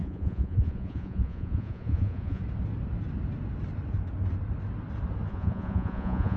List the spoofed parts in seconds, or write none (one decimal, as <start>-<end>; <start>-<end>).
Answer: 0.0-2.4; 5.3-6.4